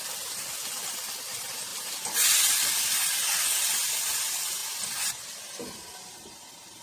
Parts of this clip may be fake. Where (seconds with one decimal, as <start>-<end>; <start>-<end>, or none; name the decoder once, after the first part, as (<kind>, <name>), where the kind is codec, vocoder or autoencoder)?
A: none